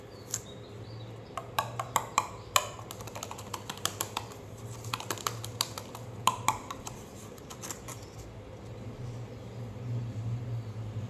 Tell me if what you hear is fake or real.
real